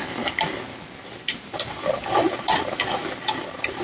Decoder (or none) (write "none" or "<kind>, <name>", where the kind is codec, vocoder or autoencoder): none